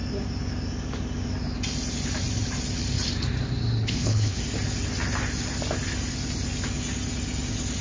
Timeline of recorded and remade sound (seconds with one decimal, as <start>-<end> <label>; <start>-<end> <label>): 0.0-3.8 recorded; 3.8-4.4 remade; 4.4-7.8 recorded